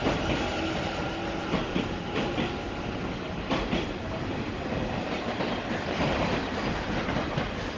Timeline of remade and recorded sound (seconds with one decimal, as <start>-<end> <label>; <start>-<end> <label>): 0.0-1.2 recorded; 1.2-2.1 remade; 2.1-7.8 recorded